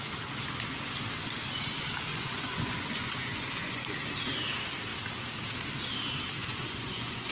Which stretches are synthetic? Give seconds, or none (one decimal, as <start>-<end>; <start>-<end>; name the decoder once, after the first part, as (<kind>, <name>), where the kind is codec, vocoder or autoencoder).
2.1-3.9 (vocoder, Vocos); 6.4-7.3

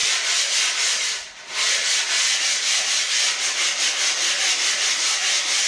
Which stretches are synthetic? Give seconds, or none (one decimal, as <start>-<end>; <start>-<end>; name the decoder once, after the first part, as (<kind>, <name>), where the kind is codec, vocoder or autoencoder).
none

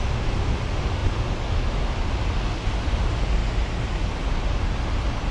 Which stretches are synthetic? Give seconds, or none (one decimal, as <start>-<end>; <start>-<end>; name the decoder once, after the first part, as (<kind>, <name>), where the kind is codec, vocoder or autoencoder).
none

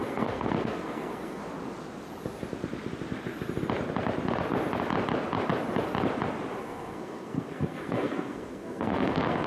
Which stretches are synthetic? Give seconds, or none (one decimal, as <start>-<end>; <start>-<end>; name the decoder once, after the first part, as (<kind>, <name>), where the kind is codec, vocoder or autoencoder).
0.0-1.4 (codec, SNAC); 6.6-9.5

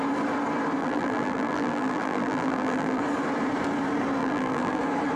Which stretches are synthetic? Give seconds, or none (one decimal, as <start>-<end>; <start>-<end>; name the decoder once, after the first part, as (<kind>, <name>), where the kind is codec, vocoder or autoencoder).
0.8-3.0 (vocoder, BigVGAN v2); 4.2-4.8